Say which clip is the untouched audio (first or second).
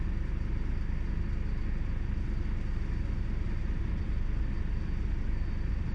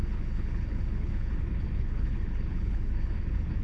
first